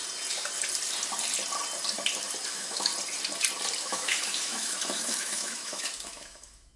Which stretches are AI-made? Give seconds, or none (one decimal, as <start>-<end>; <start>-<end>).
2.5-2.9; 3.8-6.8